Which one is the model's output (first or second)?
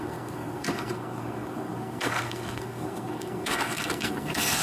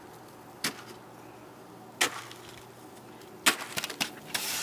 first